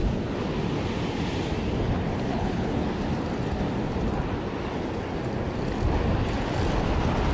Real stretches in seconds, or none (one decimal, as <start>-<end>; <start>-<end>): 0.0-2.3; 2.9-7.3